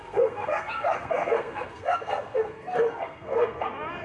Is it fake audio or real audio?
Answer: fake